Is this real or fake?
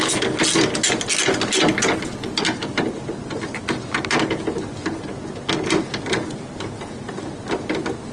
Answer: real